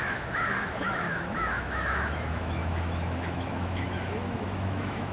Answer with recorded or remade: remade